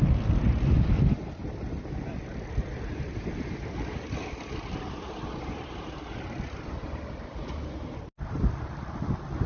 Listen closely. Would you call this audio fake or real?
real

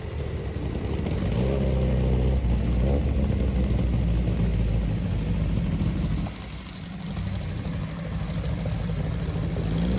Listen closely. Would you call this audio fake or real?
real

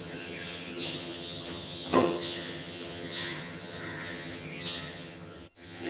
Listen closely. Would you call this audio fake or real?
fake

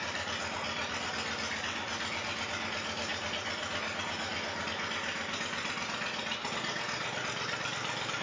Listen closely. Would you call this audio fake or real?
real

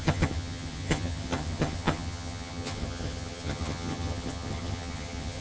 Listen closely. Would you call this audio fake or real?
fake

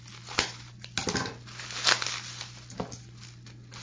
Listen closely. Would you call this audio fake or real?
real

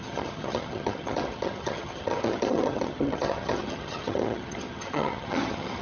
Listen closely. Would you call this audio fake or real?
fake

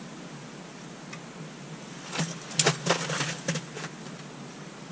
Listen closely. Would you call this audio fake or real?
real